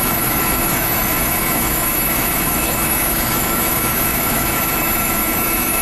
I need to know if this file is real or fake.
fake